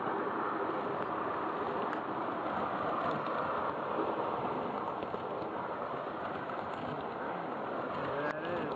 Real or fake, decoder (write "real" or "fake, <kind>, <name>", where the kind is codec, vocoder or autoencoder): real